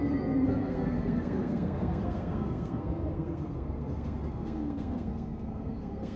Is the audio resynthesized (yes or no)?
yes